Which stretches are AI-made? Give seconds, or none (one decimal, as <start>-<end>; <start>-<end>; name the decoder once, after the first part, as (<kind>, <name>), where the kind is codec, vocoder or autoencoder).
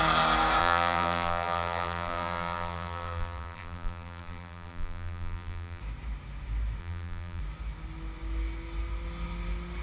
0.6-5.8 (vocoder, BigVGAN v2); 6.8-7.4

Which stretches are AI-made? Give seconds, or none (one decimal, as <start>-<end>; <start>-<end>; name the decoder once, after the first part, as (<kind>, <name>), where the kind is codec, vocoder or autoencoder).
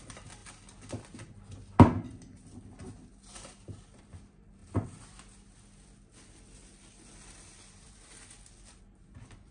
0.0-0.4 (vocoder, BigVGAN v2); 4.0-4.6; 8.8-9.5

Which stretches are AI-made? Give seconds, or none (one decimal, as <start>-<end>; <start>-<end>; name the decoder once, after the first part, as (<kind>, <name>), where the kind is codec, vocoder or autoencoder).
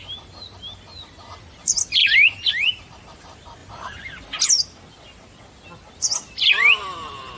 none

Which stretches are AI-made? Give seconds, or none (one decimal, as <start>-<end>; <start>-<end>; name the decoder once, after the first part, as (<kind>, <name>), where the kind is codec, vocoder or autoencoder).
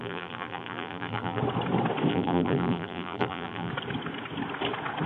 0.0-1.4 (vocoder, BigVGAN v2); 2.1-3.7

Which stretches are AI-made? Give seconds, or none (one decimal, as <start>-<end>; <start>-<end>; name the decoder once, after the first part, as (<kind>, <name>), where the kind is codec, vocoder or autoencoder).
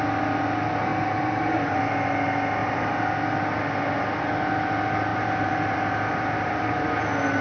0.9-1.8 (vocoder, BigVGAN v2); 2.6-3.1; 5.1-6.9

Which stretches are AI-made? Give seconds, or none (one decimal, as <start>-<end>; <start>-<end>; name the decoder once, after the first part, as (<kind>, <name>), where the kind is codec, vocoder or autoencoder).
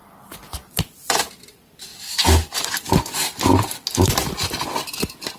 0.0-1.2 (vocoder, BigVGAN v2)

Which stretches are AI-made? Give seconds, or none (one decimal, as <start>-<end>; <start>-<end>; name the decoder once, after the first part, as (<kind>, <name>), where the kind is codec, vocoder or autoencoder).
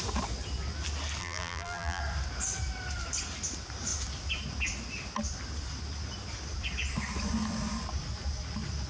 1.2-2.0 (vocoder, BigVGAN v2)